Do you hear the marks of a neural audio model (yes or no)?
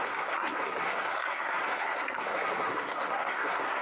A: yes